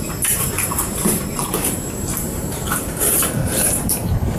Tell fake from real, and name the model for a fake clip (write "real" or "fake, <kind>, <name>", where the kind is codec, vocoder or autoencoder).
fake, vocoder, BigVGAN v2